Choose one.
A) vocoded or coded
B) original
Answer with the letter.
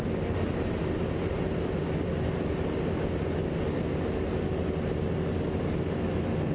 B